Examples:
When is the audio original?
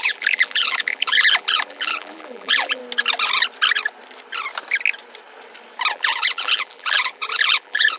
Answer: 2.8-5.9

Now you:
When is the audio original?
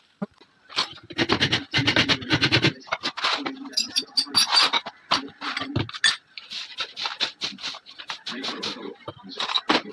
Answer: 0.0-9.9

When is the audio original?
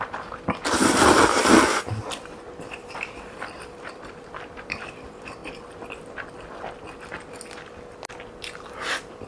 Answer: 1.4-2.0; 5.4-9.3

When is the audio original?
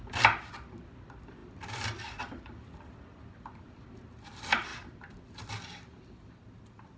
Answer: 0.0-1.4; 3.7-4.7; 5.5-7.0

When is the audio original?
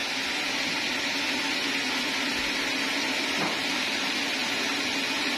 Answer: 0.0-5.4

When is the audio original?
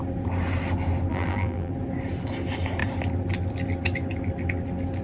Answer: 0.0-1.1; 1.7-5.0